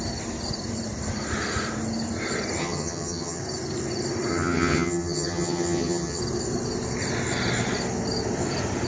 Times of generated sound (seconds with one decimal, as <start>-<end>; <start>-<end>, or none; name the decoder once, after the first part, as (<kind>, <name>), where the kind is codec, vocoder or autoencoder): 2.6-3.4 (vocoder, HiFi-GAN); 4.3-6.2